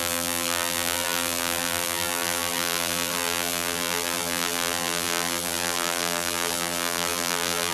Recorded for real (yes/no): no